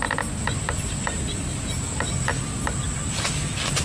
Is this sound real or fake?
real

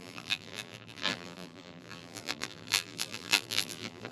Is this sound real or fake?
fake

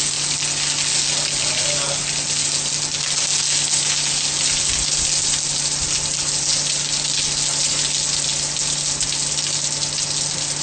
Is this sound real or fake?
real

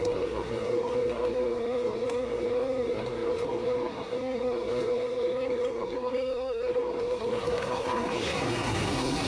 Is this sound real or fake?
fake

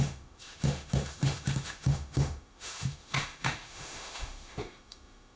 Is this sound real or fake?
fake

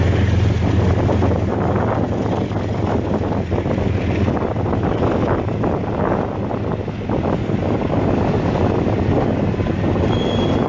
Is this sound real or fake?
real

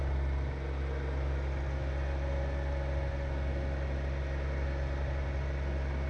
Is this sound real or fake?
real